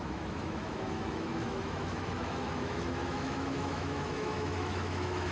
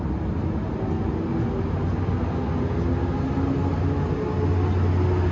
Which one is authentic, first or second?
second